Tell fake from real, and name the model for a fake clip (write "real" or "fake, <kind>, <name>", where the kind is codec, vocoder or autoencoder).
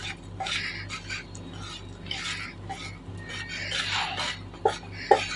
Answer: real